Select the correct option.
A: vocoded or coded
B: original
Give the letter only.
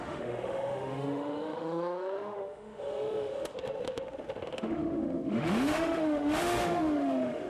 A